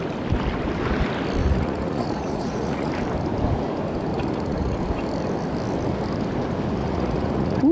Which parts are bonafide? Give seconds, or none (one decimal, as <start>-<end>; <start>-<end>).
0.0-1.4; 2.9-4.1; 4.8-6.8